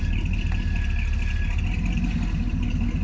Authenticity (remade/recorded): recorded